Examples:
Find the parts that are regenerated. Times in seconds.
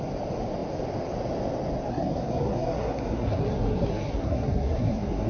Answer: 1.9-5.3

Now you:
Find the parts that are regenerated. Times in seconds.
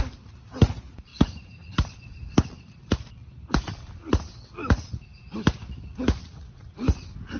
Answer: 1.1-1.7; 6.2-6.7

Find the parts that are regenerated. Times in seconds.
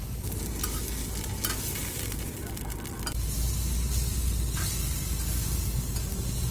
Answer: none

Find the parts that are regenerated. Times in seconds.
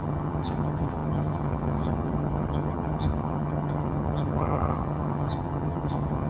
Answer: 0.0-6.3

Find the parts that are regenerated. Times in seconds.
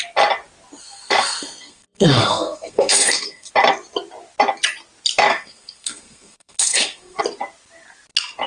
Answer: 0.8-3.5; 5.3-7.2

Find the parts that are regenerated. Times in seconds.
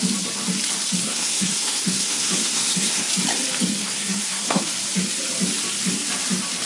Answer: 1.0-3.1; 3.8-4.6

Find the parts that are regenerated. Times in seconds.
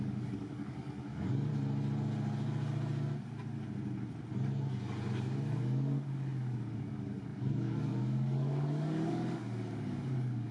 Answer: 0.0-1.5; 5.1-10.5